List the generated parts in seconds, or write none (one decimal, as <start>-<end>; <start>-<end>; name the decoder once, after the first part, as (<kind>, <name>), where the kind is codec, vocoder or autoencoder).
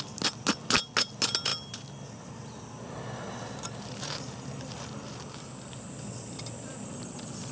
none